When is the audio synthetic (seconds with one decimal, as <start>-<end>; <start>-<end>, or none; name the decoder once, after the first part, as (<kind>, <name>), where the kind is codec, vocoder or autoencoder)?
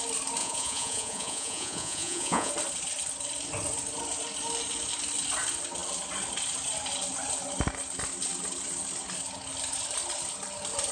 0.4-2.5 (vocoder, Vocos)